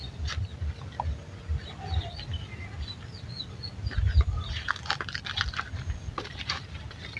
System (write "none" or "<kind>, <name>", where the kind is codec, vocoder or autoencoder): none